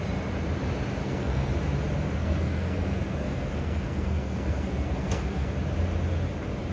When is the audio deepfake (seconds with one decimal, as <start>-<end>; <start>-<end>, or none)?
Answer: 1.0-1.5; 2.2-5.5